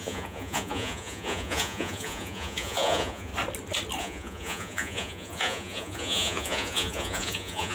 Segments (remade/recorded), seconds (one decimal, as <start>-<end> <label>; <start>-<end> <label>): 0.0-3.3 remade; 3.3-4.0 recorded; 4.0-7.7 remade